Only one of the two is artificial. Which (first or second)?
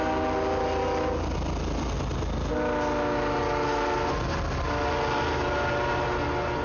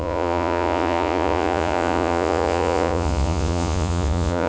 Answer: second